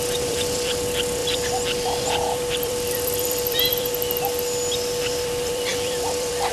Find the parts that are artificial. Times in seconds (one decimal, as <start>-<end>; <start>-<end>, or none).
0.0-3.9; 5.0-6.5